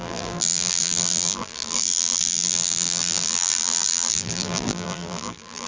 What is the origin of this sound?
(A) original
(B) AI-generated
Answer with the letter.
B